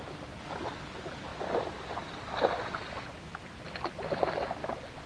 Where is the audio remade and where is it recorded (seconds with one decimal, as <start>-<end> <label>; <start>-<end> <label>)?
0.0-5.1 recorded